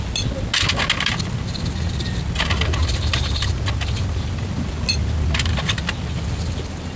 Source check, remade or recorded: recorded